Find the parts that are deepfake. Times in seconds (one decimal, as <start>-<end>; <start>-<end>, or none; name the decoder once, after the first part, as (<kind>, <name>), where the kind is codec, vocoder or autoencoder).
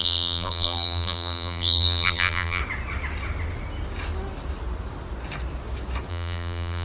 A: 0.0-2.6 (vocoder, BigVGAN v2); 6.1-6.8